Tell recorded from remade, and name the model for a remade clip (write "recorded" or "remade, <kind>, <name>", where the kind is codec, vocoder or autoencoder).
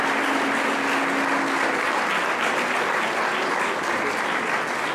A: recorded